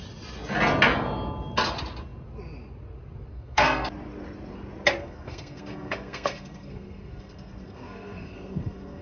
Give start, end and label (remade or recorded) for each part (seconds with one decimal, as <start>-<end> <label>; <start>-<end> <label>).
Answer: 0.0-3.3 recorded; 3.3-3.9 remade; 3.9-5.0 recorded; 5.0-9.0 remade